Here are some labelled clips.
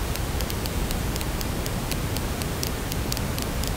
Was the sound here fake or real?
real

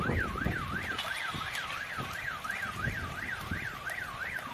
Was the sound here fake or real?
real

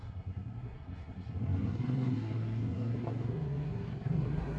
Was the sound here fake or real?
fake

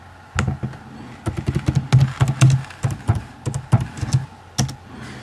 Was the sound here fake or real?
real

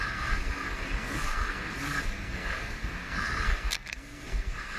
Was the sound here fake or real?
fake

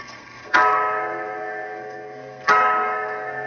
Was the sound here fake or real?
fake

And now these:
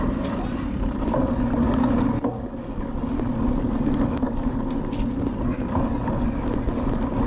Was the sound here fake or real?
real